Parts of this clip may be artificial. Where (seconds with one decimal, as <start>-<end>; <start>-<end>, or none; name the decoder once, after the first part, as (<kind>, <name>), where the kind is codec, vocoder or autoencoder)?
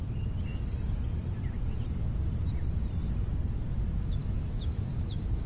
4.2-5.5 (autoencoder, DAC-VAE)